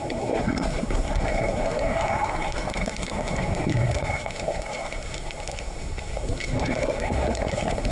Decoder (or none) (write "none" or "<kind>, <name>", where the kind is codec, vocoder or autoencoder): codec, SNAC